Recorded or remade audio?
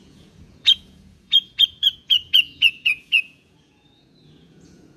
remade